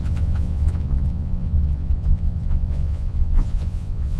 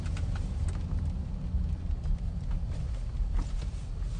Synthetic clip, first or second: first